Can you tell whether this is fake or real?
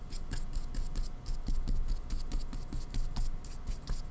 real